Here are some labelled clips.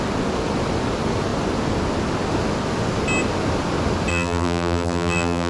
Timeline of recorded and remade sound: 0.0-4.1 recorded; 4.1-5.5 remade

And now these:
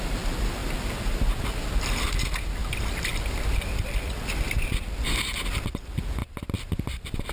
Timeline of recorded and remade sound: 0.0-0.6 recorded; 0.6-1.4 remade; 1.4-6.2 recorded; 6.2-7.3 remade

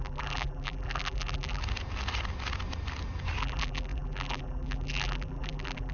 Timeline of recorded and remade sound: 0.0-1.6 remade; 1.6-3.4 recorded; 3.4-5.9 remade

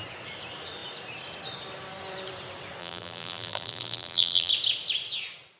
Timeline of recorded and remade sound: 0.0-2.8 recorded; 2.8-4.5 remade; 4.5-5.6 recorded

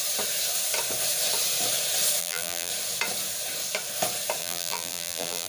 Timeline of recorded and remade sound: 0.0-2.2 recorded; 2.2-2.7 remade; 2.7-4.4 recorded; 4.4-5.5 remade

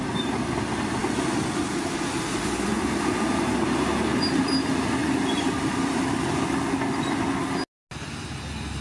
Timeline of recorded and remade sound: 0.0-2.7 recorded; 2.7-4.5 remade; 4.5-5.0 recorded; 5.0-6.0 remade; 6.0-8.8 recorded

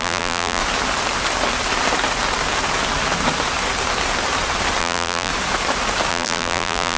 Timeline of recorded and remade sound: 0.0-0.6 remade; 0.6-4.8 recorded; 4.8-5.3 remade; 5.3-6.1 recorded; 6.1-7.0 remade

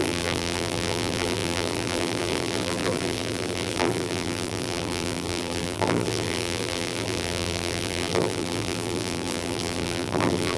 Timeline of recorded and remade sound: 0.0-10.6 remade